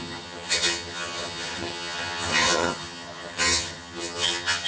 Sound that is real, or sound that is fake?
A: fake